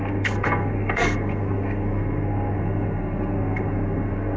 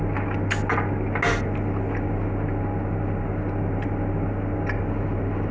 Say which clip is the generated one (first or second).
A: first